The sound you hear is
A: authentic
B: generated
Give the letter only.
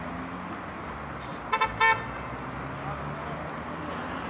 A